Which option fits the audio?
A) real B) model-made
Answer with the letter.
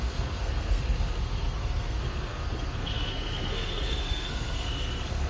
B